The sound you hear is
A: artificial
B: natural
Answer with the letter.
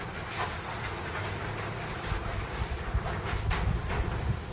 B